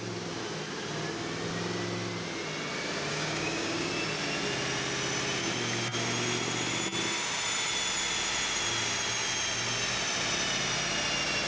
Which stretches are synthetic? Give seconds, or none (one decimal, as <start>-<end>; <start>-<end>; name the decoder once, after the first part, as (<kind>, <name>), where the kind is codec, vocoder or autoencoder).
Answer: 3.1-3.9 (codec, DAC)